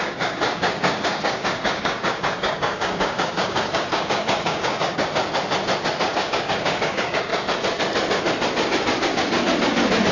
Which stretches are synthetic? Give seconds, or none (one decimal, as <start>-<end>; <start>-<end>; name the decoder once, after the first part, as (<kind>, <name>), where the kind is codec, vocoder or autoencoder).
0.0-5.2 (codec, DAC); 6.0-7.3